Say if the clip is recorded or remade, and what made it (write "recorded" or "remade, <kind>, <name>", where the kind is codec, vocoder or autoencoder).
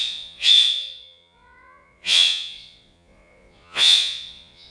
remade, vocoder, Vocos